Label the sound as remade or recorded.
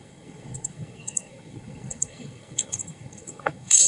remade